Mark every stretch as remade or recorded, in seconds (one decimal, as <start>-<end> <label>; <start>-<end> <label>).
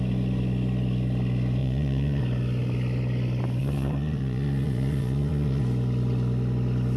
0.0-1.6 recorded; 1.6-2.2 remade; 2.2-3.6 recorded; 3.6-5.6 remade; 5.6-7.0 recorded